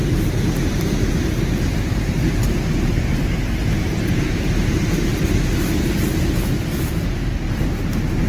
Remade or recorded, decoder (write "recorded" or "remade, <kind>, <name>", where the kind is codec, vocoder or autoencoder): remade, vocoder, BigVGAN v2